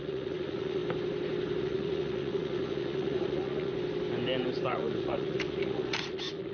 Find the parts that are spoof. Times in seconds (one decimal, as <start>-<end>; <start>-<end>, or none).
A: 0.0-0.8; 1.6-3.7; 4.7-6.5